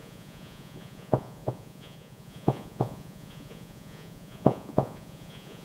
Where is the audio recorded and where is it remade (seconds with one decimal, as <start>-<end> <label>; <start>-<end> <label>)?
0.0-5.6 remade